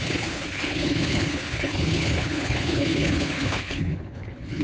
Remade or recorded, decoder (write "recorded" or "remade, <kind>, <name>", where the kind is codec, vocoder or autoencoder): remade, codec, HILCodec